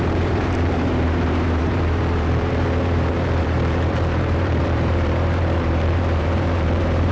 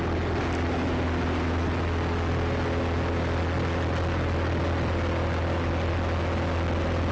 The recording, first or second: second